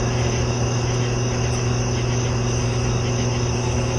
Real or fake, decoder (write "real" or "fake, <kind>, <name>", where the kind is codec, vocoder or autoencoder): real